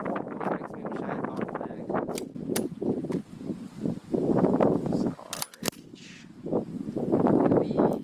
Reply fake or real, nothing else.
real